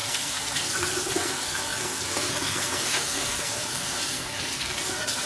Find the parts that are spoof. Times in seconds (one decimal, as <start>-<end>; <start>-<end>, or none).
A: 0.0-5.3